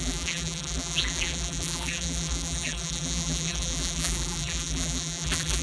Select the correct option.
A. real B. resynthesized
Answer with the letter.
B